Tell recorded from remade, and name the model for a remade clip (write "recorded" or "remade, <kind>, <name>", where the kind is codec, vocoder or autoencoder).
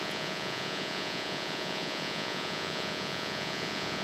remade, vocoder, Vocos